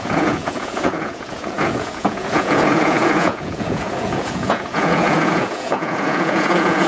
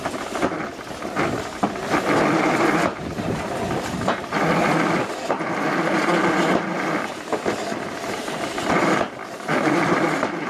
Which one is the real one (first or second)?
second